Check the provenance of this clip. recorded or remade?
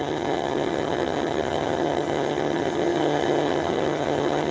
remade